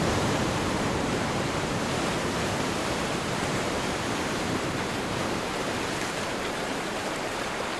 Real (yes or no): no